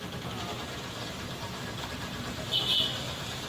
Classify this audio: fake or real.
real